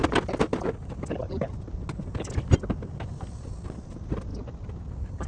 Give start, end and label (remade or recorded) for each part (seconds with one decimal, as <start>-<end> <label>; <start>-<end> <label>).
0.0-5.3 recorded